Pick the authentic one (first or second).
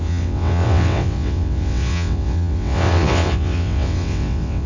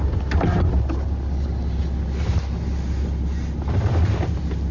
second